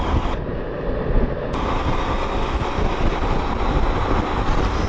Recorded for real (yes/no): yes